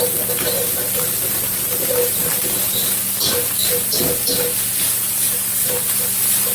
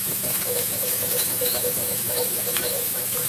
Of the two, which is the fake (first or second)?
second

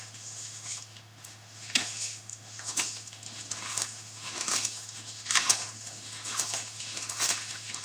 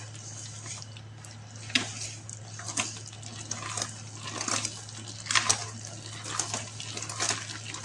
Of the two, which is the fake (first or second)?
first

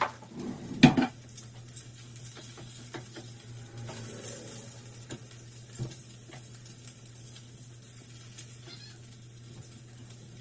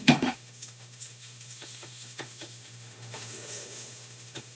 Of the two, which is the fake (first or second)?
second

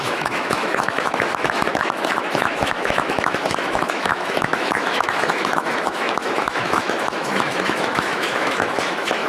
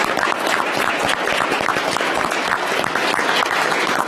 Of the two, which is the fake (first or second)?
first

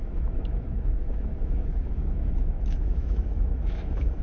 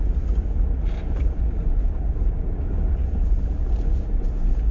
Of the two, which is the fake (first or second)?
first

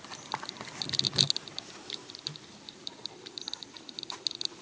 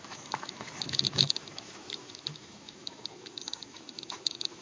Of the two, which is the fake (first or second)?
second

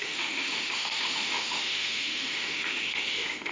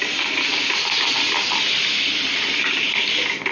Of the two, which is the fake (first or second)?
first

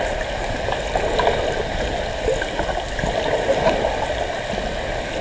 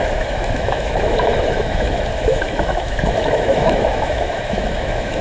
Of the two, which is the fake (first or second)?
second